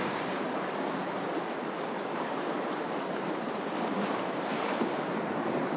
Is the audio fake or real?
fake